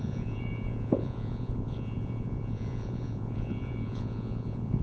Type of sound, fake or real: fake